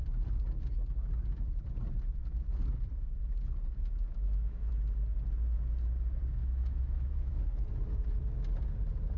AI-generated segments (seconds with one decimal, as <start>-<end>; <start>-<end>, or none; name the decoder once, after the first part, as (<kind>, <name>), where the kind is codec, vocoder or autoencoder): 4.1-4.7 (autoencoder, DAC-VAE); 6.4-7.4